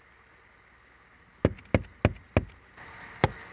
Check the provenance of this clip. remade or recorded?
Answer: recorded